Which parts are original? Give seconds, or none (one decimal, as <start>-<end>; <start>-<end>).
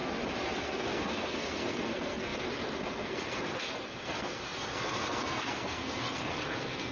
0.0-0.6